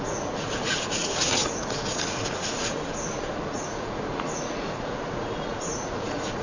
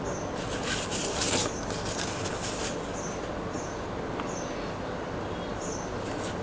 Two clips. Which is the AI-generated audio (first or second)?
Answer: first